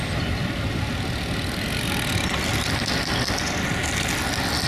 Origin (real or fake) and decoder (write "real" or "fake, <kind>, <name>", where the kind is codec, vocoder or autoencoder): real